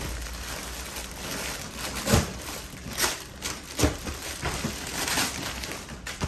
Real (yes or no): yes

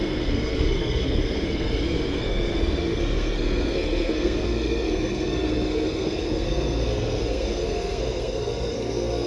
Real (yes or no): no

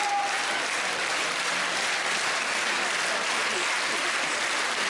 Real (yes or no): yes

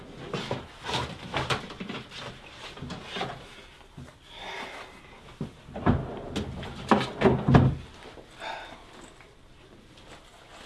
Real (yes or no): yes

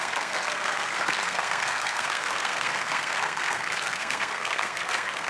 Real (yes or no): no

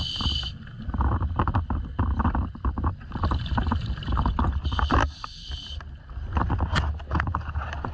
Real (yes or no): yes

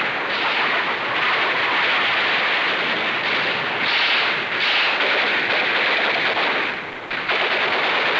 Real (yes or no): yes